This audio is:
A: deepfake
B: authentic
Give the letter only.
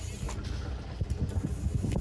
B